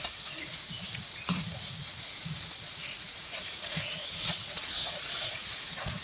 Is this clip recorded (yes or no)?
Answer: no